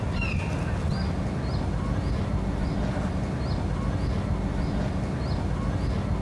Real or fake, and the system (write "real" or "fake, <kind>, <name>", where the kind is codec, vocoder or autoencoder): real